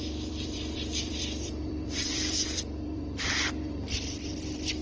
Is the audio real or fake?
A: fake